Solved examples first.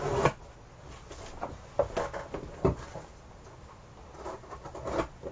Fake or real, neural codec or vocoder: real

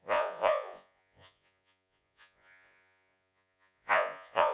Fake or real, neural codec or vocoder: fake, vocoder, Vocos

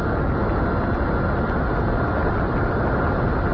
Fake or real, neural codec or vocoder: real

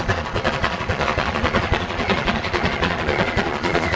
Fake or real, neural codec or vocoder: fake, vocoder, Vocos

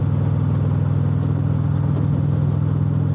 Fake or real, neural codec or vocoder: real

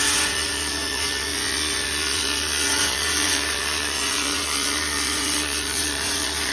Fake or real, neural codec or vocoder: fake, vocoder, Vocos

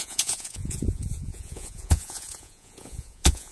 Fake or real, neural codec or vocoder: fake, vocoder, Vocos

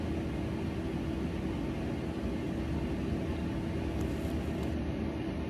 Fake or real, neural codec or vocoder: real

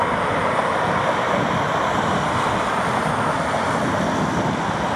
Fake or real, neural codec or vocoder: real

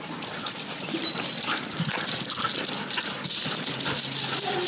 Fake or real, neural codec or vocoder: real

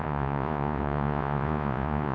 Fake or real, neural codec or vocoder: fake, vocoder, Vocos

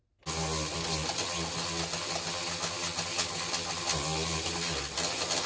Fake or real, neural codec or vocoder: real